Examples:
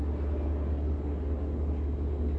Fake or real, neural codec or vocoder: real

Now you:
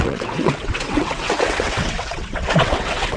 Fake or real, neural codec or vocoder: fake, vocoder, WaveNeXt